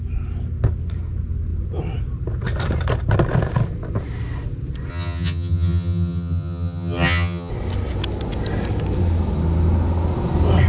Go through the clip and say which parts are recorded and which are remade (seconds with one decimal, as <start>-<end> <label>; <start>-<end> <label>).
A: 0.0-4.9 recorded; 4.9-7.5 remade; 7.5-10.7 recorded